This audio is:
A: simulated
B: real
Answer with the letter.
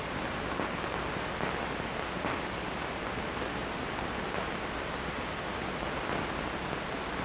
B